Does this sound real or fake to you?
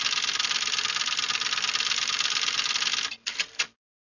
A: fake